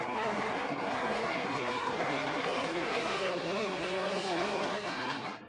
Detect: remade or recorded remade